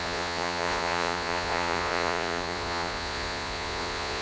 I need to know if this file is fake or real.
fake